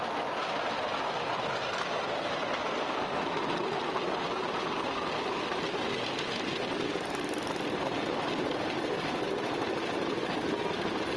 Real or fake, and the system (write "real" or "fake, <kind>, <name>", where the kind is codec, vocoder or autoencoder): real